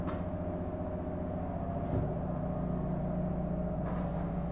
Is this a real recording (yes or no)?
yes